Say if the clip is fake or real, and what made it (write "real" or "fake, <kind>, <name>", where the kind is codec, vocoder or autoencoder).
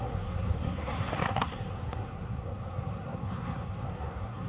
fake, codec, SNAC